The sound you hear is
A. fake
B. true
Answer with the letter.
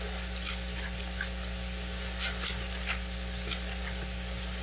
B